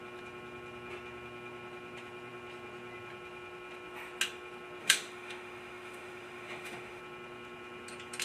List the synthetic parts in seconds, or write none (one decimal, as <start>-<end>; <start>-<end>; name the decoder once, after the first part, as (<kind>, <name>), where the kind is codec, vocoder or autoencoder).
4.8-7.0 (autoencoder, DAC-VAE)